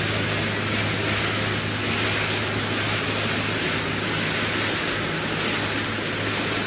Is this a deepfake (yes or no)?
no